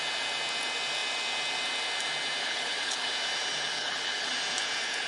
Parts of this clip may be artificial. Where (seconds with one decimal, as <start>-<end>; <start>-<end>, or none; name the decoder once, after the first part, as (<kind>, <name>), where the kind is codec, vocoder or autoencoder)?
2.4-3.1 (codec, HILCodec); 3.7-4.3